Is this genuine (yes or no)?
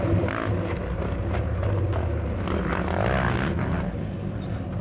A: yes